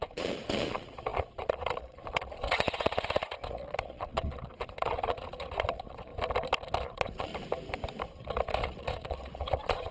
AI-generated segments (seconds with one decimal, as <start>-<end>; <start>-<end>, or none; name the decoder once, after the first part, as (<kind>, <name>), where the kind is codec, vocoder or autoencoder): 0.0-6.1 (vocoder, Vocos); 6.8-7.3; 8.1-9.9

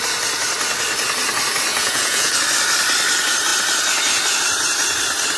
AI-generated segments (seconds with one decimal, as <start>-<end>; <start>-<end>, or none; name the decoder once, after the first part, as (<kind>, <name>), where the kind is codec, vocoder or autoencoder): 1.7-2.3 (vocoder, Vocos)

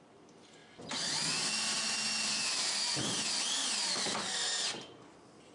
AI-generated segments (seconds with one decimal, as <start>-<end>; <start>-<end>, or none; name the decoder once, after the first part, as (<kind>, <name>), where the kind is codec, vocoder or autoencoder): none

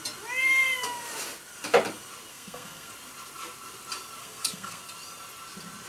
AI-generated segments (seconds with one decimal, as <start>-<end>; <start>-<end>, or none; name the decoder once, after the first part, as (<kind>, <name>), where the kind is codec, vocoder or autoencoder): 2.3-2.9 (codec, SNAC); 4.2-4.8

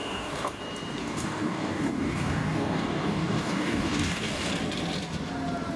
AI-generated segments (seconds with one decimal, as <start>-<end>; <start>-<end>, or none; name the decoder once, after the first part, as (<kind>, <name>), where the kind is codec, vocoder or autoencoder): 0.0-0.6 (codec, DAC); 1.0-4.5

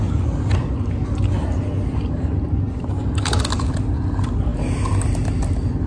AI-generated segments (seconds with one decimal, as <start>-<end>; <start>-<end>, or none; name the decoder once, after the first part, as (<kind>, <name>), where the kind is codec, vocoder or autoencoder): none

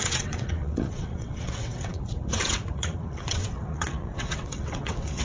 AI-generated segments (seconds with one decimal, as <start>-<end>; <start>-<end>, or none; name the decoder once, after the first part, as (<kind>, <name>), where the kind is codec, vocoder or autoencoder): 0.0-5.2 (vocoder, WaveNeXt)